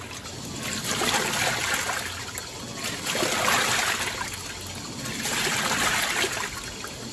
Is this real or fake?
real